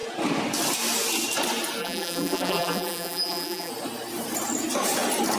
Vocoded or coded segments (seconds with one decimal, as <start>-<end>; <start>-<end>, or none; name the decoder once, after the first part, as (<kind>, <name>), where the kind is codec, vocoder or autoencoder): 1.8-3.7 (vocoder, BigVGAN v2)